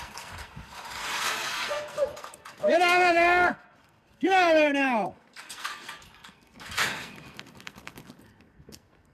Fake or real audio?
fake